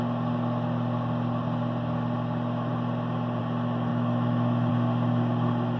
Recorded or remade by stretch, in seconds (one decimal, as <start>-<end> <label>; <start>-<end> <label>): 0.0-3.9 recorded; 3.9-4.7 remade; 4.7-5.8 recorded